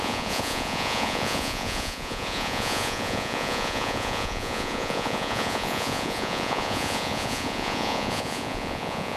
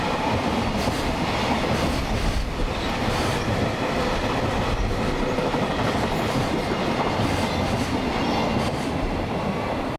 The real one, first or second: second